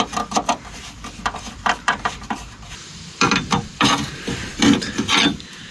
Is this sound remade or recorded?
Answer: remade